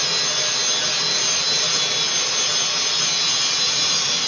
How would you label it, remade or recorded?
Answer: recorded